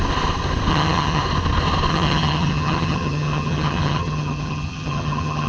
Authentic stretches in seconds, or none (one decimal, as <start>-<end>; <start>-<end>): 0.0-0.7; 1.2-1.9